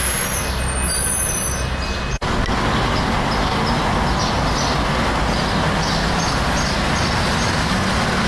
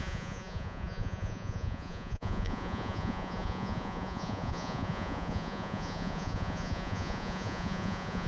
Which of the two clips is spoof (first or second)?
second